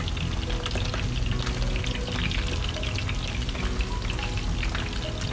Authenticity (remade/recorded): recorded